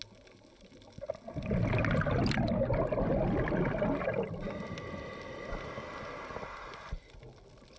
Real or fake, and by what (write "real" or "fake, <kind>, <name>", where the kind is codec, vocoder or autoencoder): real